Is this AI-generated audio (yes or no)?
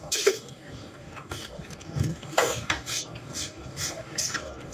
yes